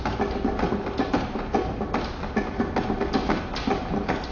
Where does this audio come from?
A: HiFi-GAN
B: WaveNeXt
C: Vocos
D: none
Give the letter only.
D